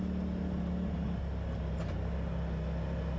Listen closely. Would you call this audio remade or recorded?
recorded